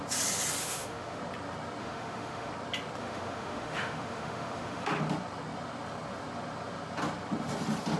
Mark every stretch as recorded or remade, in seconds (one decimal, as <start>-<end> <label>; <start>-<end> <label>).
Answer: 0.0-0.6 recorded; 0.6-1.2 remade; 1.2-1.8 recorded; 1.8-2.5 remade; 2.5-3.0 recorded; 3.0-4.9 remade; 4.9-8.0 recorded